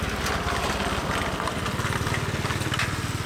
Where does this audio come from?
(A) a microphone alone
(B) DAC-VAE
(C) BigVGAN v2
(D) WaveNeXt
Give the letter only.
A